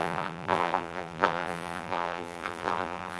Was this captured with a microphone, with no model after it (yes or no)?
no